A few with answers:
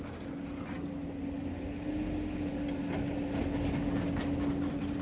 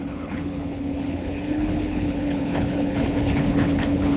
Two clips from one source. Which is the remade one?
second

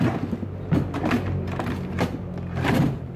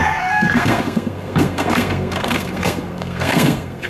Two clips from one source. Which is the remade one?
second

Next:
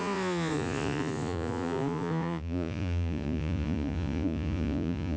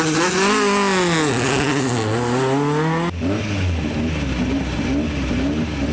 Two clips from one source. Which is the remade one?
first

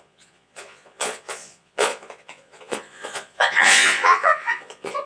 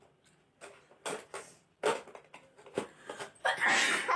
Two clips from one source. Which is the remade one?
first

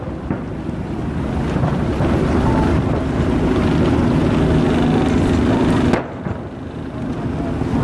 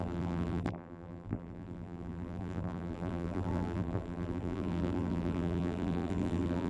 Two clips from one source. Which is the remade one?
second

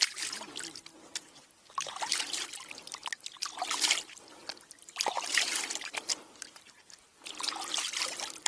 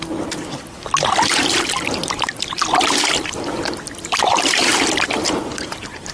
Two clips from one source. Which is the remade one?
second